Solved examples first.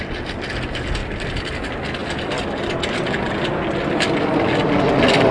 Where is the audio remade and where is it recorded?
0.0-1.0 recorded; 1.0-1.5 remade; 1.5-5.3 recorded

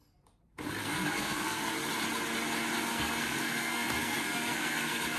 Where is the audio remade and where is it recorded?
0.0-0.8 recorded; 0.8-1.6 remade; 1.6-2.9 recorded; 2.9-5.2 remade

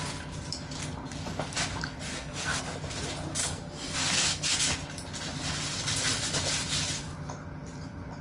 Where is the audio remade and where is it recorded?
0.0-2.1 recorded; 2.1-2.6 remade; 2.6-3.4 recorded; 3.4-4.7 remade; 4.7-8.2 recorded

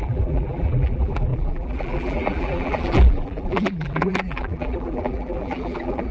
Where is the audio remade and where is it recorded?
0.0-6.1 remade

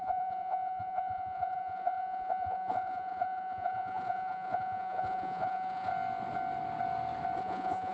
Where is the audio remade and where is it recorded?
0.0-5.9 remade; 5.9-7.4 recorded; 7.4-7.9 remade